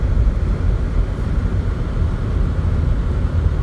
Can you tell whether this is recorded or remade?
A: recorded